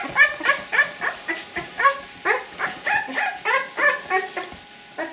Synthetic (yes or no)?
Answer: no